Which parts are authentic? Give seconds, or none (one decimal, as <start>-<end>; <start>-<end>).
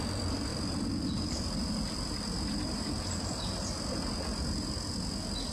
0.0-0.5; 3.7-5.5